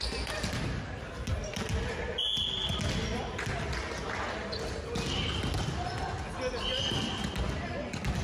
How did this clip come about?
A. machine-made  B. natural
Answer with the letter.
B